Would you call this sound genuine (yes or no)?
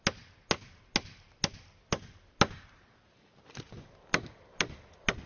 yes